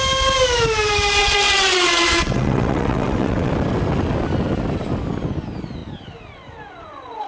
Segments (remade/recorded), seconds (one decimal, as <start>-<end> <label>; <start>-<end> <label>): 0.0-1.2 recorded; 1.2-3.5 remade; 3.5-7.3 recorded